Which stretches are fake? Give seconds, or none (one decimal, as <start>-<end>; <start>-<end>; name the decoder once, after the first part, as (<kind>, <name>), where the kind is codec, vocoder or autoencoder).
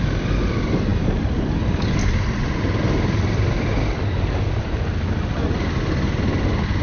none